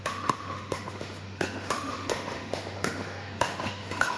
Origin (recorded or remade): remade